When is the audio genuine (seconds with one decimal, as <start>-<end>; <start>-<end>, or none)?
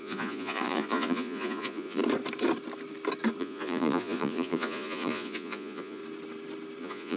2.0-3.4; 6.0-6.8